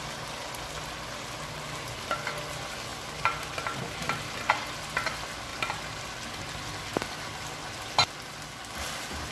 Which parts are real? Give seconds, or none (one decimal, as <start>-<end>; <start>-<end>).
0.0-9.3